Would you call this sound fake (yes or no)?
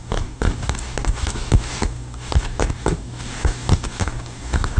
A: yes